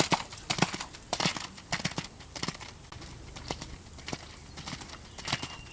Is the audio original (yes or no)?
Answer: yes